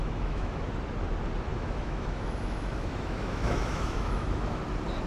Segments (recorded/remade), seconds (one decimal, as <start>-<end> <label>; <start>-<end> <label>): 0.0-0.7 remade; 0.7-1.5 recorded; 1.5-4.6 remade; 4.6-5.1 recorded

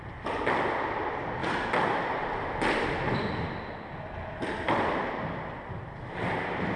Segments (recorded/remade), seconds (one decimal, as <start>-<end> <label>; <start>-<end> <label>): 0.0-6.8 recorded

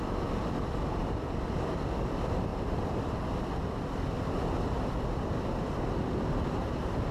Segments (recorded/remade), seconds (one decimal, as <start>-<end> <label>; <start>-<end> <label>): 0.0-1.0 recorded; 1.0-1.7 remade; 1.7-7.1 recorded

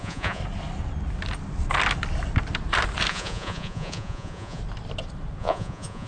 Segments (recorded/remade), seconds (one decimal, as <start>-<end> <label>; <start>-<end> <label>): 0.0-0.4 remade; 0.4-3.1 recorded; 3.1-4.6 remade; 4.6-5.4 recorded; 5.4-6.1 remade